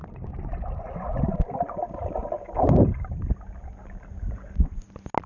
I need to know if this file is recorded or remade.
recorded